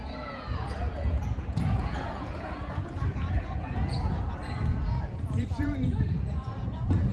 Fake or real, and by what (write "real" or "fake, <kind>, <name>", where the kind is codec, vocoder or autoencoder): fake, vocoder, Vocos